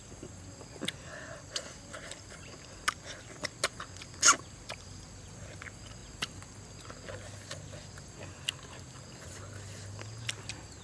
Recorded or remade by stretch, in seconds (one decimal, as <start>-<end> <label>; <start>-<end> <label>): 0.0-10.8 recorded